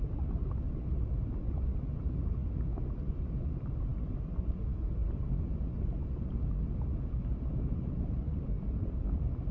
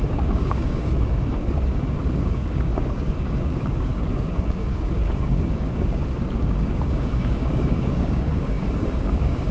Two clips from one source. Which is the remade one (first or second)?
second